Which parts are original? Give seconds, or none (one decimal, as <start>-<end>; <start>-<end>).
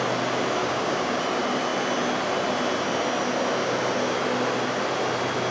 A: 0.0-0.6; 1.2-5.5